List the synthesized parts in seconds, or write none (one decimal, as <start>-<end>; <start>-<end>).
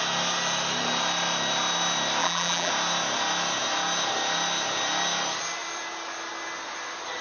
2.2-2.7